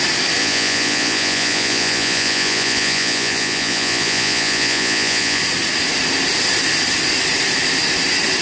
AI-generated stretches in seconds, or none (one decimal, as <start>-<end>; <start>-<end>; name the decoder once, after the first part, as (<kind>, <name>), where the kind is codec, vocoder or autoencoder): 0.4-5.4 (vocoder, Vocos)